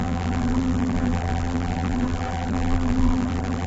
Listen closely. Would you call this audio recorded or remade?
remade